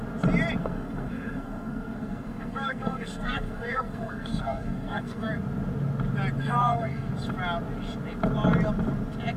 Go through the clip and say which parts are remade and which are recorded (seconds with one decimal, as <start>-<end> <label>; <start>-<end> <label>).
0.0-0.6 recorded; 0.6-5.3 remade; 5.3-6.4 recorded; 6.4-7.1 remade; 7.1-9.4 recorded